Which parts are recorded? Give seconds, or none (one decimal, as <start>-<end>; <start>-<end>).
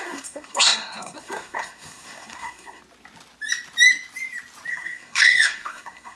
2.8-4.7